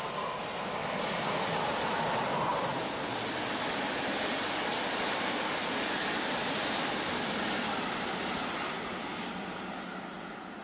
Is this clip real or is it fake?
real